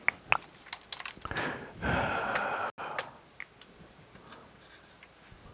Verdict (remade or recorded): recorded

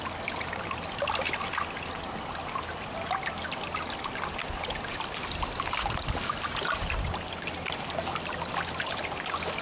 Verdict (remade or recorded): recorded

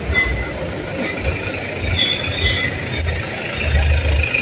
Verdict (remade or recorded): recorded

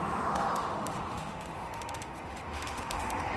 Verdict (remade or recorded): remade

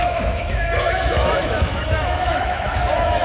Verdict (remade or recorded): remade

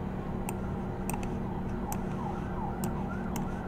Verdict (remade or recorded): recorded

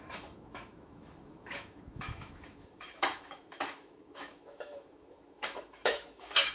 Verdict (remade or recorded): remade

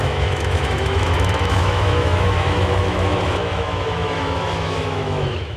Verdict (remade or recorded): remade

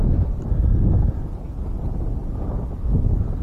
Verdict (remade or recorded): recorded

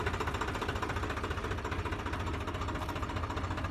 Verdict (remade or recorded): recorded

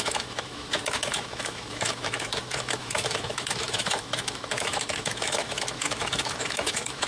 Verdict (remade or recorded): remade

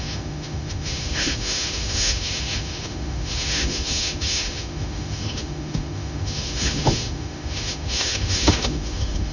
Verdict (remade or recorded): remade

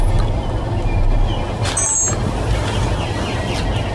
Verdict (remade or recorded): recorded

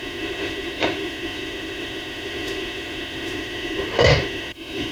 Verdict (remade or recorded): remade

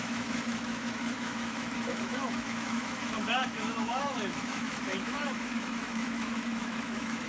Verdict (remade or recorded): remade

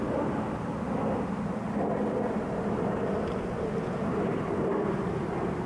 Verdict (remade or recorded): recorded